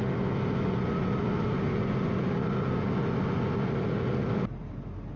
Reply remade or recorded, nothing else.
recorded